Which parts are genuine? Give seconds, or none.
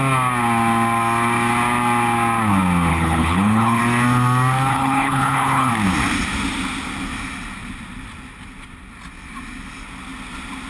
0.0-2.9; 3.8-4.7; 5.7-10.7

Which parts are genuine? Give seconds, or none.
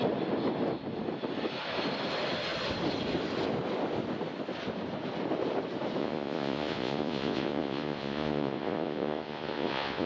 0.0-6.0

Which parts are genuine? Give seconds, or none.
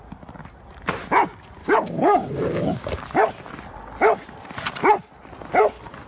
0.0-1.6; 3.0-6.1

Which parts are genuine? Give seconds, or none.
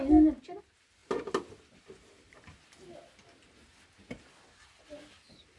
0.0-5.6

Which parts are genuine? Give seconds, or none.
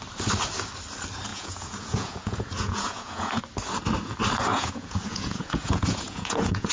0.0-1.3; 3.4-4.5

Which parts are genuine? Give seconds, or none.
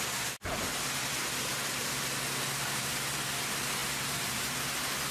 0.0-5.1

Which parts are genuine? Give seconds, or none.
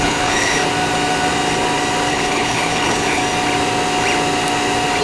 0.6-2.1; 3.2-5.0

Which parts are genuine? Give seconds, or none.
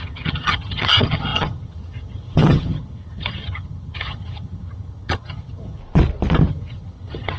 5.8-6.5